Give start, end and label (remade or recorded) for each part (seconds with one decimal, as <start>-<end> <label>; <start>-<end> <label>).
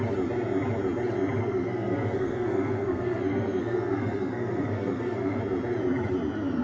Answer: 0.0-1.4 recorded; 1.4-5.4 remade; 5.4-6.6 recorded